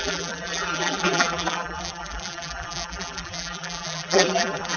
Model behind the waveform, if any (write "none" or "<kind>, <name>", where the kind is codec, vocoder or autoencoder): vocoder, BigVGAN v2